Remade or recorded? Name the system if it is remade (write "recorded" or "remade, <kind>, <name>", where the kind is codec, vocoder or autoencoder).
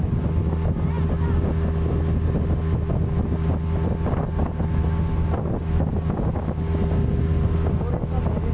recorded